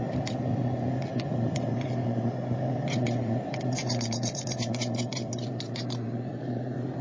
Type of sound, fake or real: real